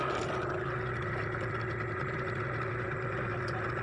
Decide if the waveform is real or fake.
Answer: real